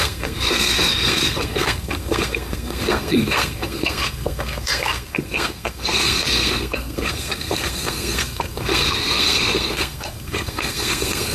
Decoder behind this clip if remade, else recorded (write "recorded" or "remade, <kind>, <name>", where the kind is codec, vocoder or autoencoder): remade, codec, SNAC